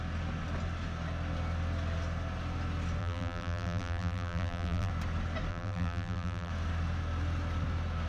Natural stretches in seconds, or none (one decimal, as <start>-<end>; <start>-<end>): 0.0-3.0; 4.9-5.5; 6.5-8.1